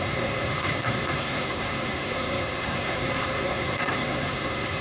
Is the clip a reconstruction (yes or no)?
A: yes